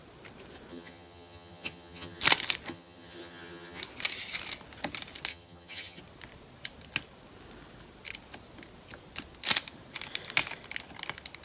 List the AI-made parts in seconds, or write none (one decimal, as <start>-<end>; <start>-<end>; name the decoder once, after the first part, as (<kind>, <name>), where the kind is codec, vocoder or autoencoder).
0.7-2.2 (vocoder, HiFi-GAN); 2.7-3.8; 5.3-6.0